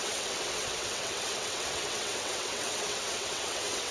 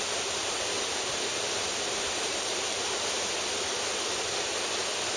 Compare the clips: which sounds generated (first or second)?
first